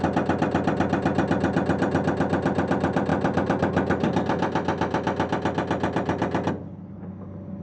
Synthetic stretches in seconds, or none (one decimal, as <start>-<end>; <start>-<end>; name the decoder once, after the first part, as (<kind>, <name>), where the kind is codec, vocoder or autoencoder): none